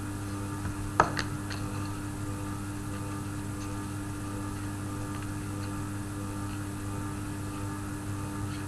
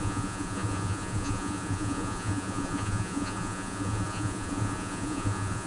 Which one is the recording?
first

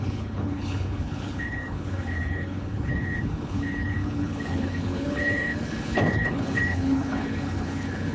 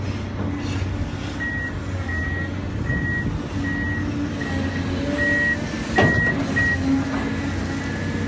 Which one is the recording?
second